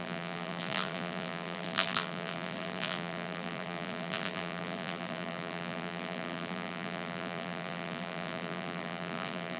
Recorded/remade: remade